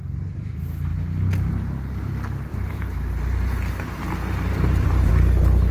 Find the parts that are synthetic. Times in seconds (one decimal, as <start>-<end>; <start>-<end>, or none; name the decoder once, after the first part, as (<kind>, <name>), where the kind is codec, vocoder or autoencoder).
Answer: 2.5-5.1 (vocoder, BigVGAN v2)